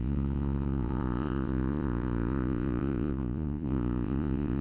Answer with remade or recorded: remade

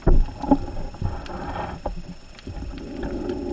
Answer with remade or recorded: recorded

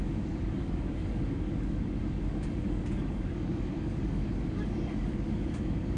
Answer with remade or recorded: remade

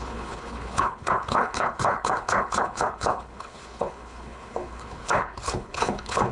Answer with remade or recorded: remade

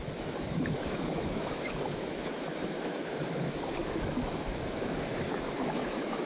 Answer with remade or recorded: remade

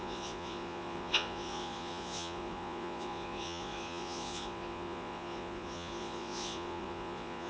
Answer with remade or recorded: remade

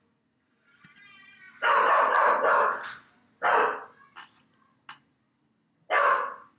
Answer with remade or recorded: recorded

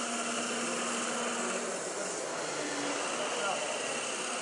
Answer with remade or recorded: recorded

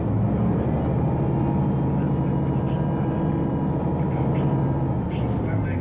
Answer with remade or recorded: recorded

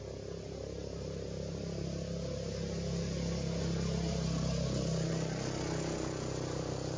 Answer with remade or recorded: recorded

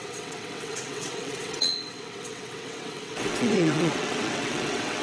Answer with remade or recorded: remade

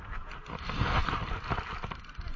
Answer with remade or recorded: recorded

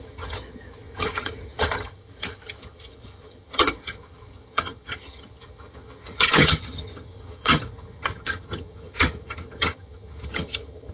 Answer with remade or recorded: remade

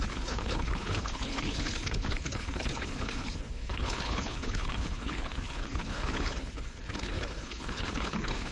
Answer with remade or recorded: remade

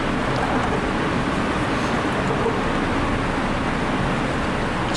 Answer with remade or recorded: recorded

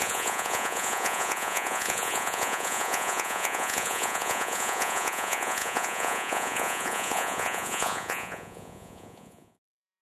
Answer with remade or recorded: remade